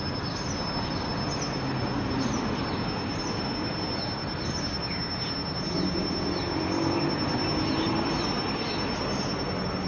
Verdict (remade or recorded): recorded